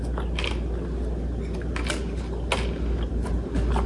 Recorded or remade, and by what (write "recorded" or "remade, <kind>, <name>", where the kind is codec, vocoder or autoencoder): recorded